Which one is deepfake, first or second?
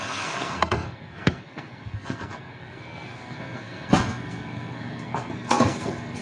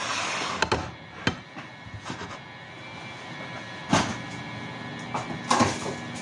first